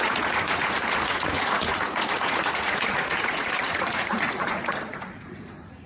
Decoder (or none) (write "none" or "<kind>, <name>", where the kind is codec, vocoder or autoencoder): vocoder, Vocos